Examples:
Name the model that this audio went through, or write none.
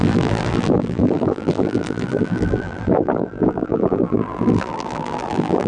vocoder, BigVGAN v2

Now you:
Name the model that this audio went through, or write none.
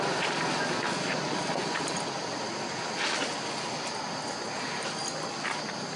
none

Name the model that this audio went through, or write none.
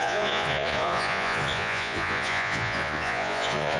vocoder, Vocos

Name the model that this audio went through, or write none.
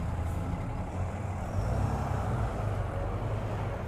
none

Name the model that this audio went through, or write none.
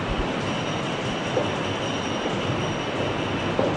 none